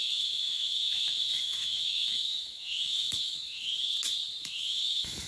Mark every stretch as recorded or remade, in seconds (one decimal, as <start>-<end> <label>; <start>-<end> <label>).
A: 0.0-3.7 remade; 3.7-4.4 recorded; 4.4-5.3 remade